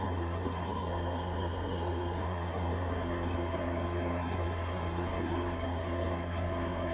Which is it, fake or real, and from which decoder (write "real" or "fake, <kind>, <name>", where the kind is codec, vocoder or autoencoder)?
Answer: fake, codec, SNAC